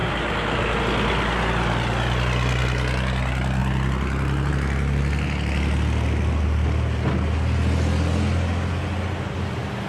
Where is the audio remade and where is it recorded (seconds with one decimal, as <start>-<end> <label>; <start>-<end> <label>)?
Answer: 0.0-9.9 recorded